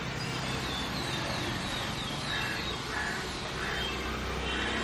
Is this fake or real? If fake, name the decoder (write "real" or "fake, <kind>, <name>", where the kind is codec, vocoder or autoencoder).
real